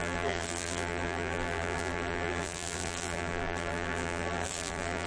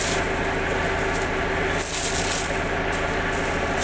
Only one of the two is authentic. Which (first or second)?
second